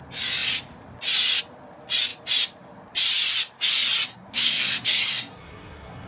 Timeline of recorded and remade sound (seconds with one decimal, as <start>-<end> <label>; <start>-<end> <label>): 0.0-4.1 recorded; 4.1-6.1 remade